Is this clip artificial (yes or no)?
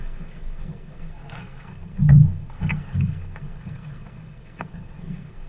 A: yes